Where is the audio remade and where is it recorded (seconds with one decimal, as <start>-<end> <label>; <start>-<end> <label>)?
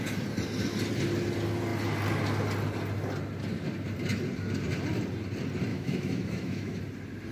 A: 0.0-5.7 recorded; 5.7-6.8 remade; 6.8-7.3 recorded